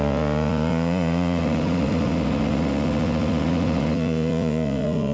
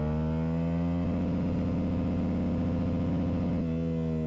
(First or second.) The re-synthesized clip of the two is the first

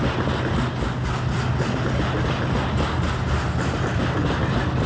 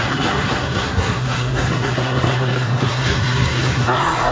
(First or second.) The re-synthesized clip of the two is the second